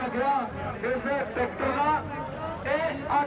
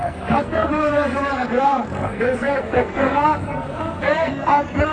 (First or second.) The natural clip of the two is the first